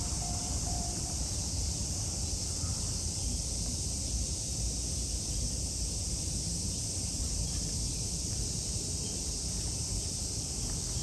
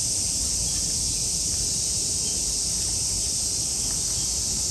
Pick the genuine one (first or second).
second